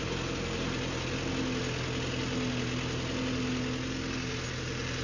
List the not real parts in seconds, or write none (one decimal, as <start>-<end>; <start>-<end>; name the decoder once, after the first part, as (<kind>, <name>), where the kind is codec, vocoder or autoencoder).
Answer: none